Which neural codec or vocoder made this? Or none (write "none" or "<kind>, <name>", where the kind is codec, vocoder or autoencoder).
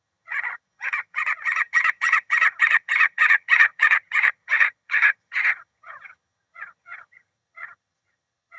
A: vocoder, HiFi-GAN